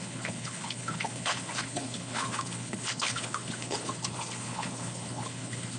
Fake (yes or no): yes